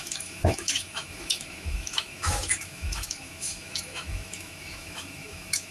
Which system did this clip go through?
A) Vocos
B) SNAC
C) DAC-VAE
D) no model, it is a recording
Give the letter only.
C